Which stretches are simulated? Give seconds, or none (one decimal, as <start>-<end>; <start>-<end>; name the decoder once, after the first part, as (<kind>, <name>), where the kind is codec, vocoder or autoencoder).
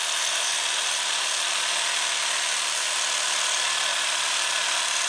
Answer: 1.2-1.9 (vocoder, BigVGAN v2); 3.9-4.5